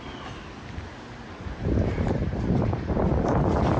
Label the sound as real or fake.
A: real